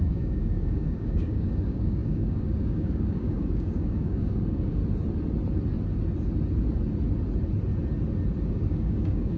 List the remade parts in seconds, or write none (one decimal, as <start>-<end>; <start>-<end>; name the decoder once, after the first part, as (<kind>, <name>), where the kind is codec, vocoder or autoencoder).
0.0-4.8 (codec, DAC); 8.5-9.4